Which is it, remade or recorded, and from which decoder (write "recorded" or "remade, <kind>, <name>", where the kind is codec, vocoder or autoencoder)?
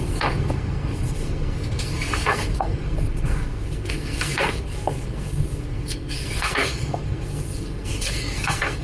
remade, codec, SNAC